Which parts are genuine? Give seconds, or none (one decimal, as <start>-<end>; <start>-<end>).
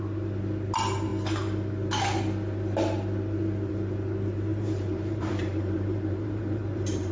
0.0-4.5